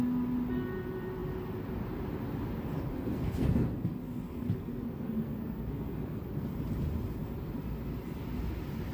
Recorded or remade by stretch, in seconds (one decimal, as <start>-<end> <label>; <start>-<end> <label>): 0.0-2.9 recorded; 2.9-6.5 remade; 6.5-8.9 recorded